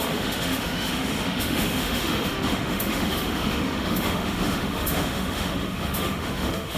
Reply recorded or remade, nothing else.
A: remade